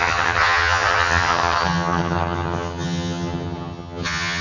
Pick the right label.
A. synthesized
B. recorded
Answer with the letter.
A